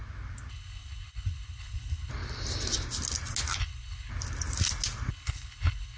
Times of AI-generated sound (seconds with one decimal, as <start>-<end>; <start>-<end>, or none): 0.5-2.1; 3.6-4.1; 5.1-6.0